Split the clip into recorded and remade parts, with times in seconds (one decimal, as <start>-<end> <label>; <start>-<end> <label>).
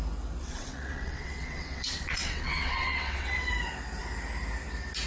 0.0-0.4 recorded; 0.4-3.5 remade; 3.5-5.1 recorded